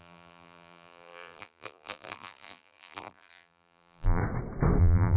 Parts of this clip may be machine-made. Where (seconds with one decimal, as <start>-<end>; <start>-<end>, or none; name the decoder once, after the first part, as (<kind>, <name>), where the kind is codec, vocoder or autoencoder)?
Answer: 0.0-4.2 (vocoder, BigVGAN v2); 4.8-5.2